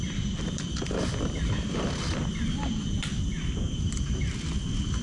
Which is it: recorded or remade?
recorded